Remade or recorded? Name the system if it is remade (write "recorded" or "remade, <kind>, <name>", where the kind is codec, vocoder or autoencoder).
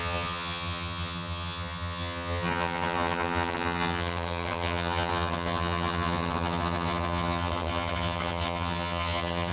remade, vocoder, HiFi-GAN